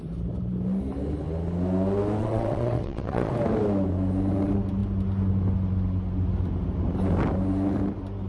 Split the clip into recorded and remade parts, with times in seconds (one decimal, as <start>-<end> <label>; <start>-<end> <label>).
0.0-2.2 recorded; 2.2-3.3 remade; 3.3-8.3 recorded

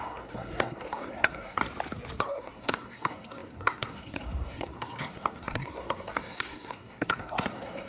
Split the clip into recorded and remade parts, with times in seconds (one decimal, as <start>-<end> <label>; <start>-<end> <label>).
0.0-1.6 remade; 1.6-2.2 recorded; 2.2-7.9 remade

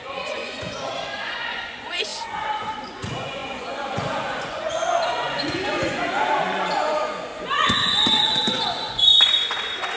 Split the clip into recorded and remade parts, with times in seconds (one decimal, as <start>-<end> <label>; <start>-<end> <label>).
0.0-10.0 remade

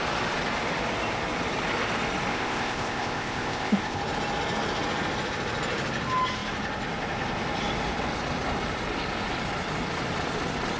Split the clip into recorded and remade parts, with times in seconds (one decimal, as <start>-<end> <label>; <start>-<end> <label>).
0.0-2.3 recorded; 2.3-4.0 remade; 4.0-10.8 recorded

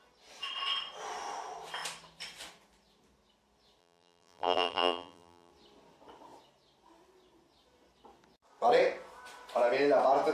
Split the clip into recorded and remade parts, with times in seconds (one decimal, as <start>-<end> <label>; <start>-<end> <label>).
0.0-3.8 recorded; 3.8-5.5 remade; 5.5-10.3 recorded